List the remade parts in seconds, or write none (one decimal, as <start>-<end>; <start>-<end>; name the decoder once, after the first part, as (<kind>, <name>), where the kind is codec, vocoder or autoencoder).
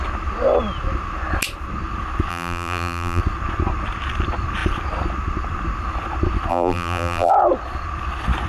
2.3-3.2 (vocoder, BigVGAN v2); 6.5-7.3